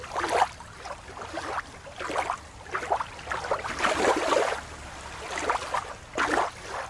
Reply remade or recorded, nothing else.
recorded